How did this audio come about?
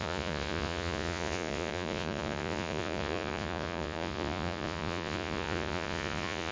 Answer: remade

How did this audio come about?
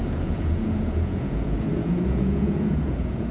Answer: remade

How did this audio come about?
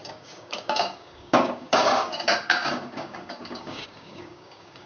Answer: remade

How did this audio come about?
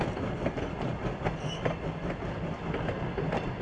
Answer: recorded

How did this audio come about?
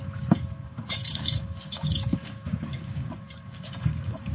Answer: remade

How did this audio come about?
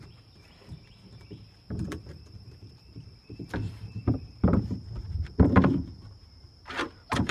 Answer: remade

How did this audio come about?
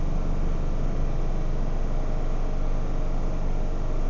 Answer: recorded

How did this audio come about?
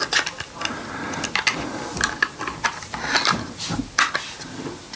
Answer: recorded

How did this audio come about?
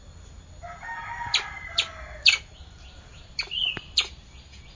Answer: recorded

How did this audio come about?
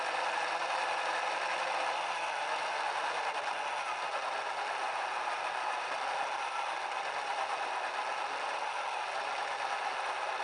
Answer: recorded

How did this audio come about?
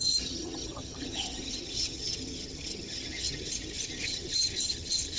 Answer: remade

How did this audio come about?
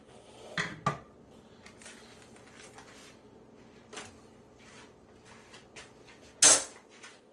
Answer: recorded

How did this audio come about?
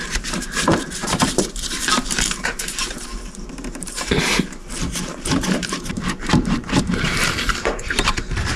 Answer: remade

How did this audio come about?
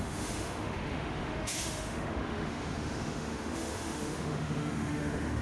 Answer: remade